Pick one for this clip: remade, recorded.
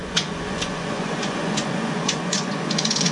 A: remade